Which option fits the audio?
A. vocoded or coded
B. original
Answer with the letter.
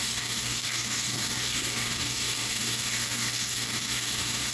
A